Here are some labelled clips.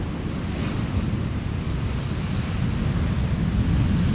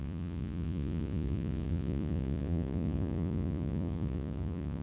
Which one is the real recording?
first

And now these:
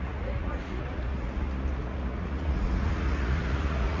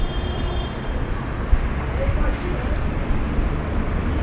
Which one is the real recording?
second